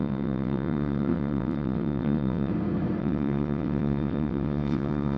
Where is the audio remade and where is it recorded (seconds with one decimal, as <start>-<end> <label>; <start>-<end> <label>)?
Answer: 0.0-2.5 remade; 2.5-3.0 recorded; 3.0-5.2 remade